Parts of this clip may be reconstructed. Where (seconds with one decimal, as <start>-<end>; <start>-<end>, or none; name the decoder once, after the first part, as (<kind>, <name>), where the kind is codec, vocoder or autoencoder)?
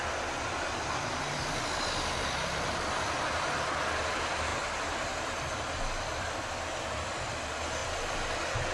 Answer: none